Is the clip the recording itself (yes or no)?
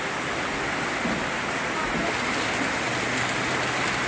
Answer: yes